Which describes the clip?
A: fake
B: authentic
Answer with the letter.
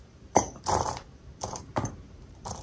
A